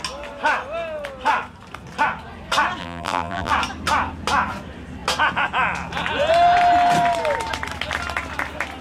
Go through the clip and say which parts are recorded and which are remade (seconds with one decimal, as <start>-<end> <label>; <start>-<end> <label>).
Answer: 0.0-2.8 recorded; 2.8-3.5 remade; 3.5-8.8 recorded